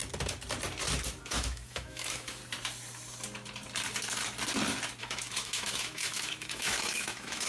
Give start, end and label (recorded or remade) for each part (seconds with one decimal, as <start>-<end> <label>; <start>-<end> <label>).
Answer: 0.0-1.2 recorded; 1.2-2.4 remade; 2.4-5.0 recorded; 5.0-7.5 remade